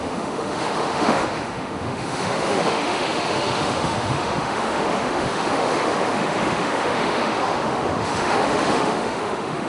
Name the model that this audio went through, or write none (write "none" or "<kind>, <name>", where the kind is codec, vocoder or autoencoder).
autoencoder, DAC-VAE